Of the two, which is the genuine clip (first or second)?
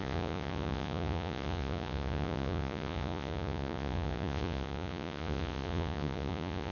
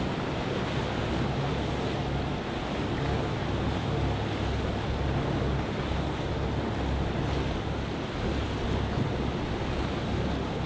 second